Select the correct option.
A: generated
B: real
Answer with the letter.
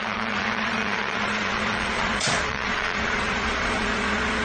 A